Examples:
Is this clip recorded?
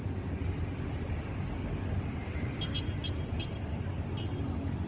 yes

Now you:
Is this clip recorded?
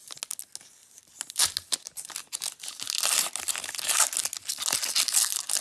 yes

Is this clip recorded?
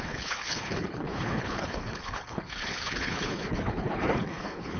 no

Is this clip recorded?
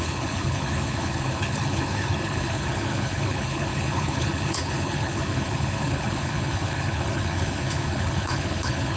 no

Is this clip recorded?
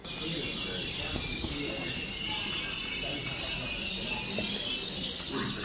yes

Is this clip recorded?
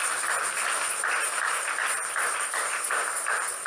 yes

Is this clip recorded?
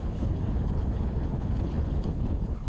no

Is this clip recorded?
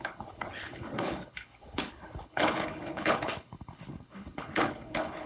no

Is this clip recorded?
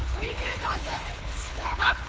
no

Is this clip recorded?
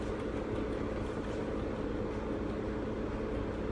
yes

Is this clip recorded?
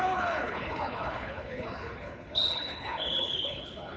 no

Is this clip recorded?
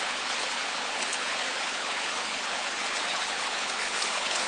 no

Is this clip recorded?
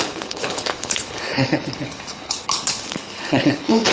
no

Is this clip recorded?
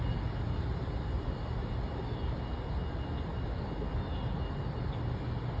yes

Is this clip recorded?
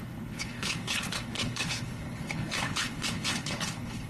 no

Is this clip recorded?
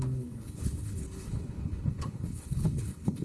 no